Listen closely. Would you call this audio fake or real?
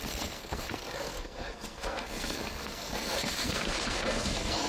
fake